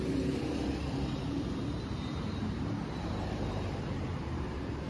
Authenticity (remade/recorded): remade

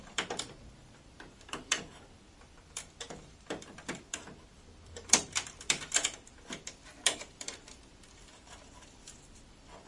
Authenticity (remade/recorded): remade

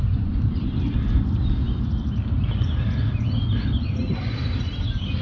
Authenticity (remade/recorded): recorded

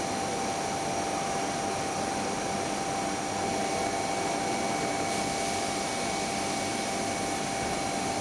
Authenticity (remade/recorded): recorded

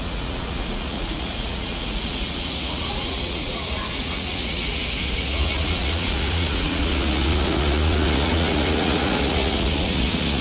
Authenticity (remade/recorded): remade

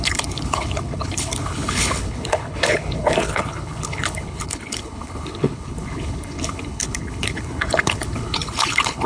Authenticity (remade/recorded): remade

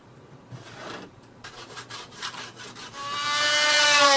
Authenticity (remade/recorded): remade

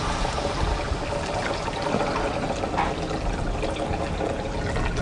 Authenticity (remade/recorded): recorded